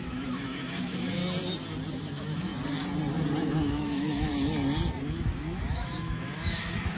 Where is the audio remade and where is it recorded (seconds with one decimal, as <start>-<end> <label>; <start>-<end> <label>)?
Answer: 0.0-1.2 remade; 1.2-1.9 recorded; 1.9-2.5 remade; 2.5-3.4 recorded; 3.4-4.3 remade; 4.3-5.0 recorded; 5.0-7.0 remade